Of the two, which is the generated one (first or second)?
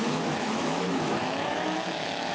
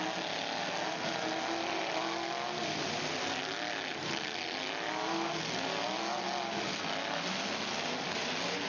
first